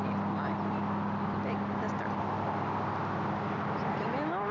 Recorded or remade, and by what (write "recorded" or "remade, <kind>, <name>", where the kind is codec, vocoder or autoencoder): recorded